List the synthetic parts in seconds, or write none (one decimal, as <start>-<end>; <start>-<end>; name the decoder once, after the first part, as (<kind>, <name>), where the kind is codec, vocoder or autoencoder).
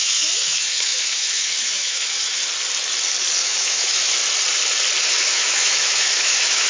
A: 0.0-2.4 (autoencoder, DAC-VAE); 3.4-4.2; 5.0-6.7